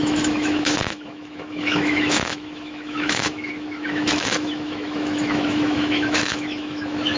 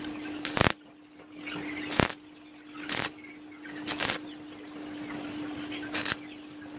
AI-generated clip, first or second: first